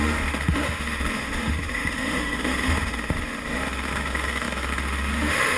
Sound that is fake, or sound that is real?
fake